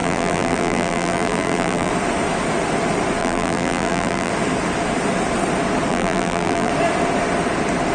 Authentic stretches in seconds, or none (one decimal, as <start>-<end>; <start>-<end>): 1.9-3.2; 4.3-5.9; 6.7-7.9